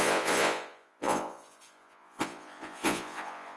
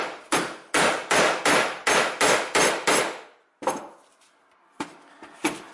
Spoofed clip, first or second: first